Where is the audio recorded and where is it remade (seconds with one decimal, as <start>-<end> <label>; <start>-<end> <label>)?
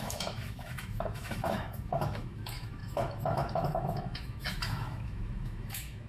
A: 0.0-6.1 remade